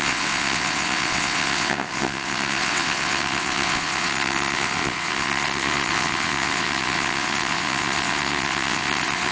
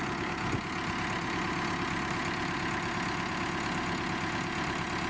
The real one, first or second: second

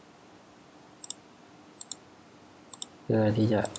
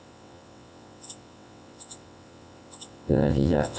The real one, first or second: first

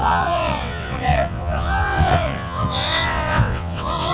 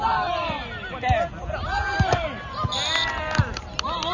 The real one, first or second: second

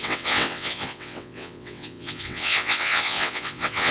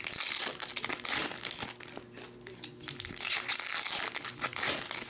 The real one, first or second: second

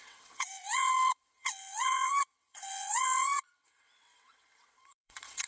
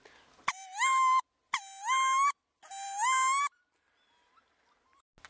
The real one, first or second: second